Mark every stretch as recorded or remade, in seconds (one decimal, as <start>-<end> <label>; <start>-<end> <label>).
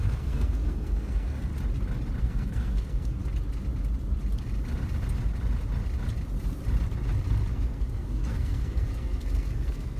0.0-1.5 remade; 1.5-2.2 recorded; 2.2-3.2 remade; 3.2-7.5 recorded; 7.5-10.0 remade